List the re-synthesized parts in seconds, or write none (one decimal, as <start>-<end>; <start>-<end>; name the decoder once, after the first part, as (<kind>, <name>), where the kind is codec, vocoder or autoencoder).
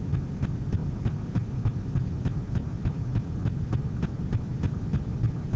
none